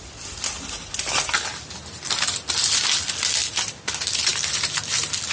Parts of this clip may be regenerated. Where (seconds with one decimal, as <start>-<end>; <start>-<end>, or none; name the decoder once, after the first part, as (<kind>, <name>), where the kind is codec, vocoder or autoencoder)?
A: none